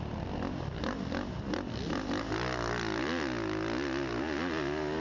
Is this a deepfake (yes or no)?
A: no